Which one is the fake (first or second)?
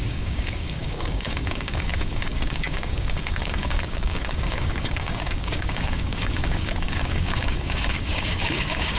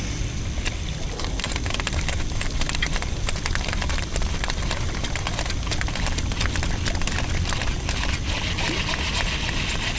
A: first